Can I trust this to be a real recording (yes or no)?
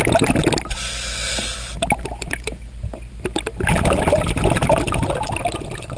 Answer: yes